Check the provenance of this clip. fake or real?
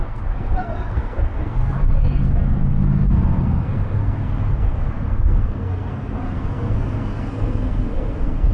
fake